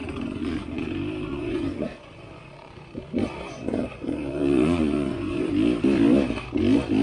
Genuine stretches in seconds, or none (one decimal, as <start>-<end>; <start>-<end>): 0.9-1.3; 5.5-7.0